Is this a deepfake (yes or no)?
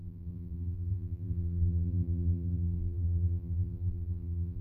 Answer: yes